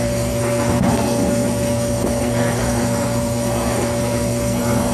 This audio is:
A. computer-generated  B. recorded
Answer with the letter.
A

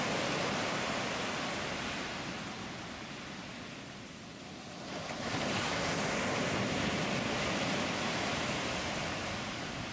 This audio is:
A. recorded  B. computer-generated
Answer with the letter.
A